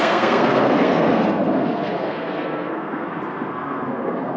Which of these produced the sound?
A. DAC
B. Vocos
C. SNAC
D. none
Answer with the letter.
C